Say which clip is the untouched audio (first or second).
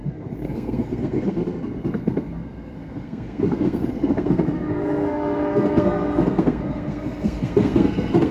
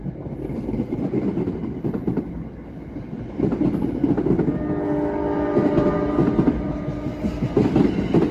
second